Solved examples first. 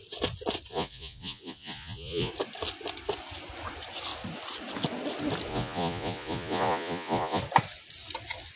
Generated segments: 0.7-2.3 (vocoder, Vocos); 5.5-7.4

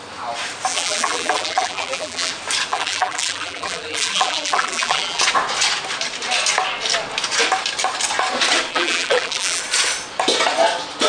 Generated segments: 0.7-2.3 (vocoder, BigVGAN v2); 2.7-5.2; 8.7-9.6

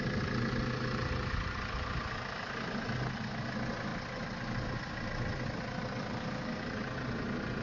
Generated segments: none

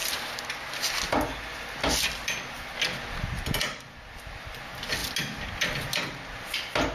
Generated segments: none

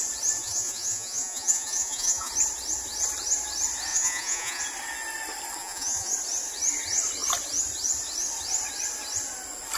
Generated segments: 0.4-2.3 (vocoder, Vocos); 3.9-4.6; 5.6-6.1

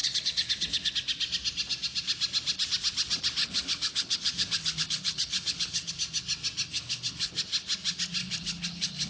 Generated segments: 0.0-0.9 (codec, HILCodec); 3.4-5.9; 6.7-7.4; 8.2-9.1